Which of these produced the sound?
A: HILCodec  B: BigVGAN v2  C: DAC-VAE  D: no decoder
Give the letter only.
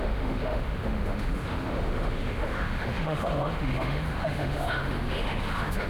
C